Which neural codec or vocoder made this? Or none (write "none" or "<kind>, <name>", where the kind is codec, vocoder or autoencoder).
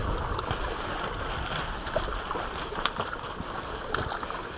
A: none